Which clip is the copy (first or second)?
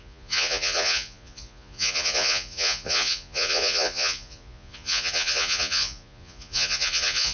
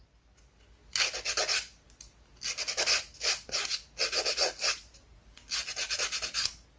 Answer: first